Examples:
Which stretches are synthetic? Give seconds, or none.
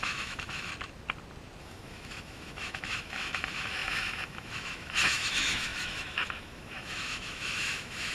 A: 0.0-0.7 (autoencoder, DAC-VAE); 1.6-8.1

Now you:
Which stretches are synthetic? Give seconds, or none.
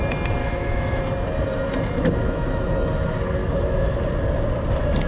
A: 0.4-1.0 (autoencoder, DAC-VAE); 2.2-2.7; 3.4-4.0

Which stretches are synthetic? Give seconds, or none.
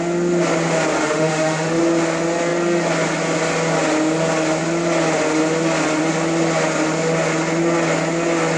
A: 1.0-1.8 (autoencoder, DAC-VAE)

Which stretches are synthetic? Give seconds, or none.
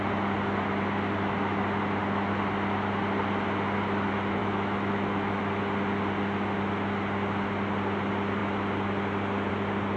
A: 4.4-5.4 (autoencoder, DAC-VAE)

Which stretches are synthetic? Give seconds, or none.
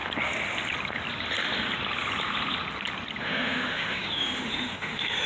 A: 3.2-5.3 (autoencoder, DAC-VAE)